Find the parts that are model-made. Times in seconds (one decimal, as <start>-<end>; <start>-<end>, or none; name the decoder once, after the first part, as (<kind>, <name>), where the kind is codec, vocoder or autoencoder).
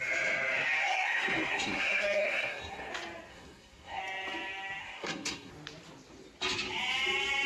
0.8-2.9 (codec, SNAC); 3.3-4.0; 4.8-5.5